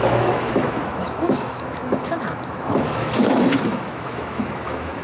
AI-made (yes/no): yes